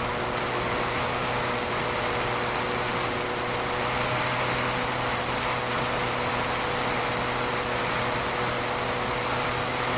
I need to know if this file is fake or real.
real